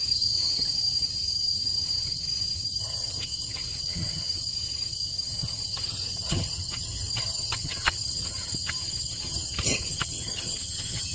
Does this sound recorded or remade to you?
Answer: remade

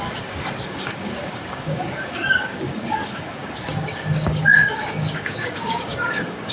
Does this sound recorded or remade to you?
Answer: remade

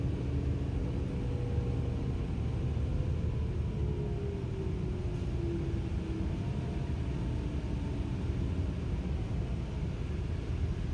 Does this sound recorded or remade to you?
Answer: recorded